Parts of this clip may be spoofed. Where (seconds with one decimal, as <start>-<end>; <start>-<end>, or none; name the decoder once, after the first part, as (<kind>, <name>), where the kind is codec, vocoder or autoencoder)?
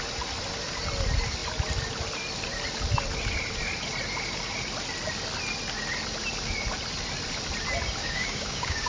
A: 8.0-8.9 (codec, DAC)